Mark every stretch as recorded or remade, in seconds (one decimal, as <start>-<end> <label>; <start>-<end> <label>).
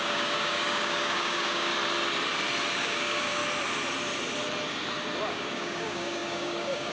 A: 0.0-1.7 remade; 1.7-2.7 recorded; 2.7-3.4 remade; 3.4-5.3 recorded; 5.3-6.9 remade